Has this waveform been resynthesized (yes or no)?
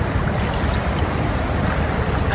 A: no